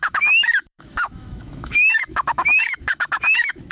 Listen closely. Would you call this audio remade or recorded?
remade